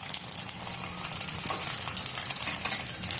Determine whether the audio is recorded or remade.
recorded